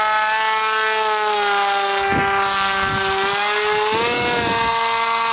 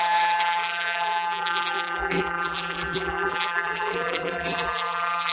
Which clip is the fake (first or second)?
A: second